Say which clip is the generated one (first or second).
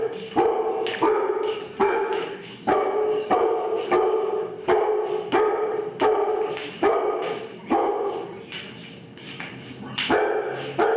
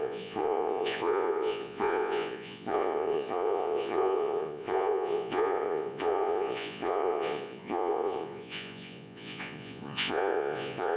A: second